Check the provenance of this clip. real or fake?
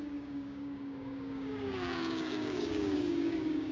fake